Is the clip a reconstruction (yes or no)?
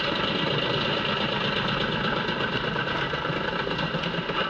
no